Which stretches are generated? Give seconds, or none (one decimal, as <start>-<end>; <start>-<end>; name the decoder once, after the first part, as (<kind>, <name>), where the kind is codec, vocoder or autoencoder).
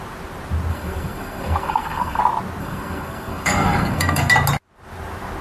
0.7-2.2 (codec, SNAC); 2.6-4.3